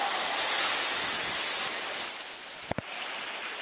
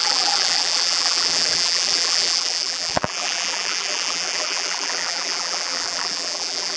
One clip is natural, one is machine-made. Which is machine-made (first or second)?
second